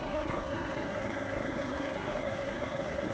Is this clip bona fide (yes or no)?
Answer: no